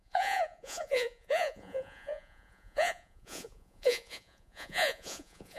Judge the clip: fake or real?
fake